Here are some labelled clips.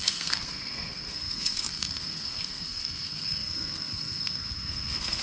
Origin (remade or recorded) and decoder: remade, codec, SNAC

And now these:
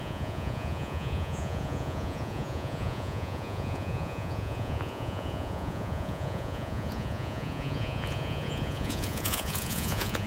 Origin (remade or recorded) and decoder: remade, vocoder, Vocos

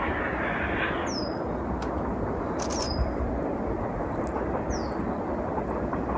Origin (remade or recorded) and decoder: recorded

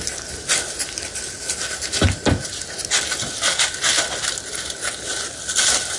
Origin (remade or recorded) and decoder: recorded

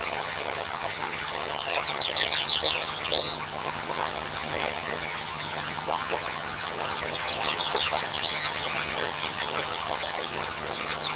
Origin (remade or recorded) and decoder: remade, vocoder, HiFi-GAN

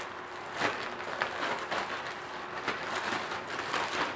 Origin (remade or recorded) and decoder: recorded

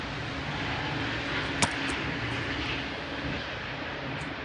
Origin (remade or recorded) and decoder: recorded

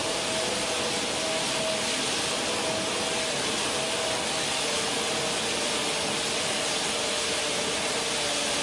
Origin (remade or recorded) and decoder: recorded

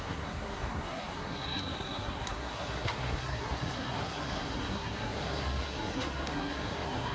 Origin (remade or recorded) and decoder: remade, codec, SNAC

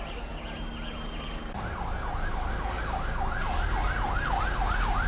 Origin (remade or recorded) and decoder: recorded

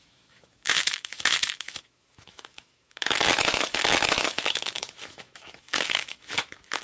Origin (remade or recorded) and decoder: remade, autoencoder, DAC-VAE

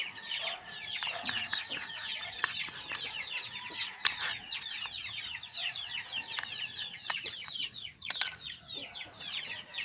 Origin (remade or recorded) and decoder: remade, vocoder, Vocos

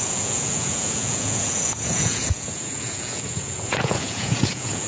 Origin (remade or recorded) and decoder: remade, vocoder, Vocos